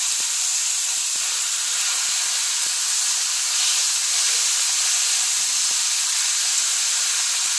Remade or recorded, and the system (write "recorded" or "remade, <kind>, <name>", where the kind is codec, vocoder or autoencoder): recorded